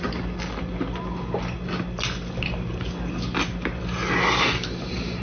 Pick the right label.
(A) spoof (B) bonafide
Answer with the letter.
B